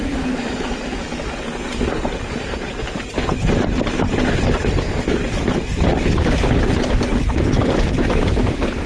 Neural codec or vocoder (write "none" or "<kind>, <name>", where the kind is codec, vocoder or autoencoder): none